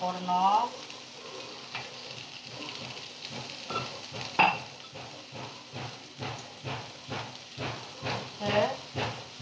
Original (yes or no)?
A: yes